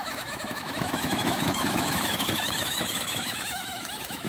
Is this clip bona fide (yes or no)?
no